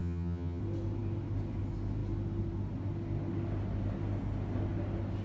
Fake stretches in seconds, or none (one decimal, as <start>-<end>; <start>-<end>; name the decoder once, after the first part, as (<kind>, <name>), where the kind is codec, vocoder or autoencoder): 0.0-0.6 (vocoder, HiFi-GAN)

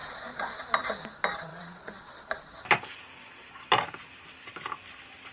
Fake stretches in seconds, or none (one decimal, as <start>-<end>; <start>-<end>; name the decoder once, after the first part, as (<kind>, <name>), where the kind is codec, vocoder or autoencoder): 0.0-0.6 (vocoder, Vocos); 1.5-2.5; 3.2-3.7

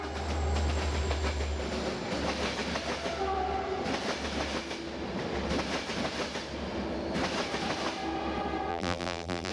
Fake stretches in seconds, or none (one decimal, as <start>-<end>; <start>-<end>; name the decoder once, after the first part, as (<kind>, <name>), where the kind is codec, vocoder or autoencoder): 8.7-9.5 (vocoder, BigVGAN v2)

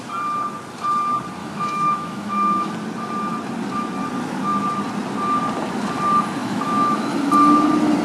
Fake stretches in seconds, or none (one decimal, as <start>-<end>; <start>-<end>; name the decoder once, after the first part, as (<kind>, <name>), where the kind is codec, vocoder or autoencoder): 1.4-2.7 (autoencoder, DAC-VAE); 6.4-7.1